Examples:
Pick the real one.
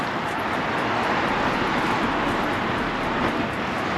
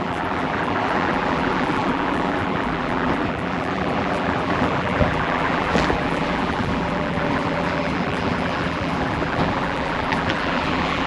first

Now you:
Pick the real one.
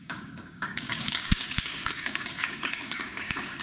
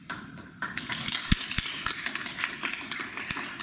second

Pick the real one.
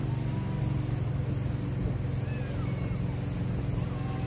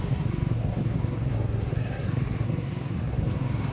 first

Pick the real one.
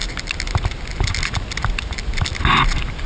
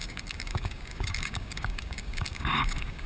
first